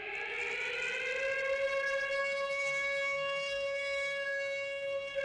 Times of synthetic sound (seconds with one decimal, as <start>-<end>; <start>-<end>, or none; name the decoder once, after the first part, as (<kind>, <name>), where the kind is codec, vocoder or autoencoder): 2.2-5.2 (codec, SNAC)